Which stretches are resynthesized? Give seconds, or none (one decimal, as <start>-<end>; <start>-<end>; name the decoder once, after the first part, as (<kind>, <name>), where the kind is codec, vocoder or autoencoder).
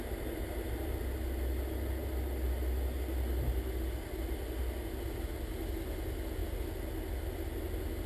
none